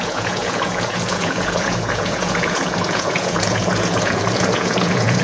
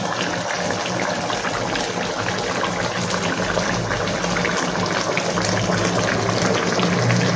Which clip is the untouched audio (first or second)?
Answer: second